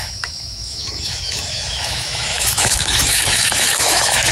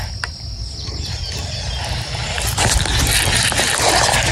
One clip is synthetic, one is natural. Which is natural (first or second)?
second